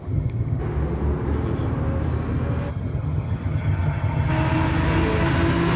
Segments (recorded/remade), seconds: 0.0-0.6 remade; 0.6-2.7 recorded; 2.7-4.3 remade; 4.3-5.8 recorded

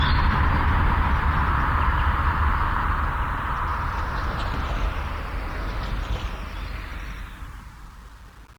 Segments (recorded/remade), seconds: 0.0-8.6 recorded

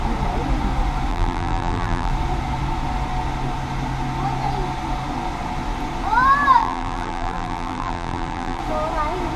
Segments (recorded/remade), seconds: 0.0-1.1 recorded; 1.1-2.1 remade; 2.1-6.6 recorded; 6.6-8.6 remade; 8.6-9.4 recorded

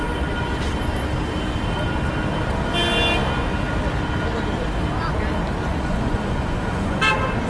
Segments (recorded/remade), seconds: 0.0-5.7 recorded; 5.7-7.0 remade; 7.0-7.5 recorded